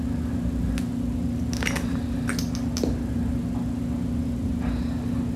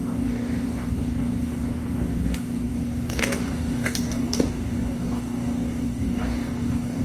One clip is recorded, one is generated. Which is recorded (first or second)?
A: first